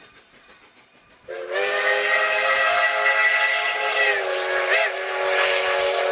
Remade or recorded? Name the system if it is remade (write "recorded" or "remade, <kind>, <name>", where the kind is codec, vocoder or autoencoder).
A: recorded